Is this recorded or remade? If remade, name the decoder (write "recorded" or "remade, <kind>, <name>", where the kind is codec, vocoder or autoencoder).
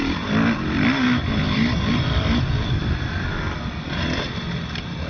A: recorded